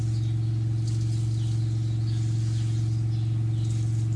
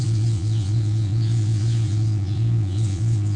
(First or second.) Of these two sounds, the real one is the first